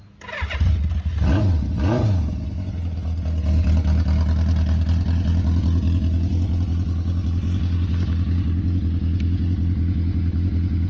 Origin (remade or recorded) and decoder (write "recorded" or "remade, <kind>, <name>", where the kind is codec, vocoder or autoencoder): recorded